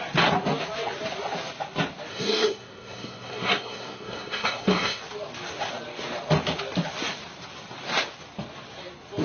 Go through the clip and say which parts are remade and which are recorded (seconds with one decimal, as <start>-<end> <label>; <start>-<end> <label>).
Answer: 0.0-2.1 recorded; 2.1-5.0 remade; 5.0-9.2 recorded